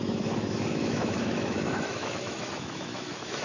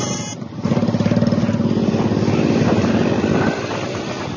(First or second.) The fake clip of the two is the first